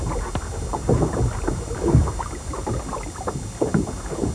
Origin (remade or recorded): recorded